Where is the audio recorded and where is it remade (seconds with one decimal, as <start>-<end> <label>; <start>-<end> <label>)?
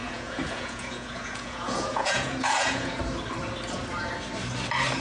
0.0-3.0 remade; 3.0-5.0 recorded